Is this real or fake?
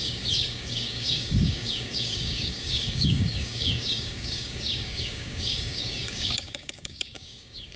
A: fake